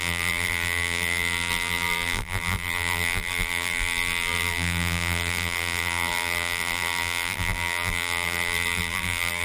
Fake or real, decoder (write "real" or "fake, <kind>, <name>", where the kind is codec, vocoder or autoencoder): fake, vocoder, BigVGAN v2